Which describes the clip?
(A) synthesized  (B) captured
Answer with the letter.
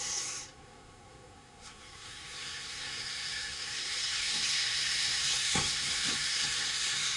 A